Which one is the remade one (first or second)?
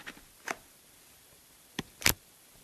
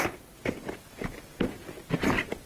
first